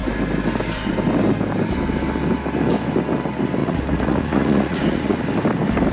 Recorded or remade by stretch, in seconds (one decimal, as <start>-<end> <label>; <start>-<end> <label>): 0.0-3.6 recorded; 3.6-5.2 remade; 5.2-5.9 recorded